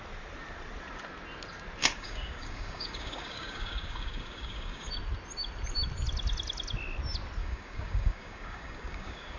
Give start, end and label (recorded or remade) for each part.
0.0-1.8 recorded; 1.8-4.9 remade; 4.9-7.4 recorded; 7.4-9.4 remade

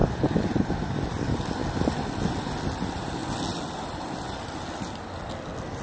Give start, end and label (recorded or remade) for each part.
0.0-5.8 recorded

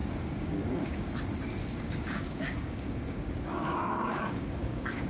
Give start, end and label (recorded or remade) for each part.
0.0-1.1 remade; 1.1-1.6 recorded; 1.6-5.1 remade

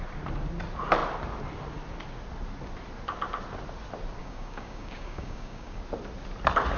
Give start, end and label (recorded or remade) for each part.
0.0-4.2 recorded; 4.2-5.8 remade; 5.8-6.8 recorded

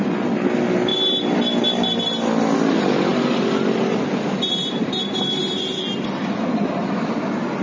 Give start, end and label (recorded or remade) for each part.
0.0-7.6 recorded

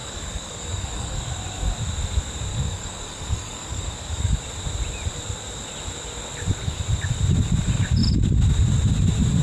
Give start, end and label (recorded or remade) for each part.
0.0-1.2 remade; 1.2-2.5 recorded; 2.5-4.4 remade; 4.4-9.4 recorded

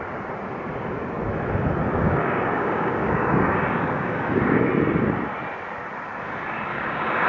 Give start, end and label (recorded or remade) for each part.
0.0-1.9 recorded; 1.9-4.7 remade; 4.7-6.7 recorded; 6.7-7.3 remade

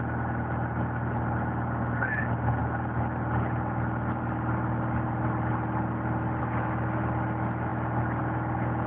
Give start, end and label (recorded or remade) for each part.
0.0-8.9 recorded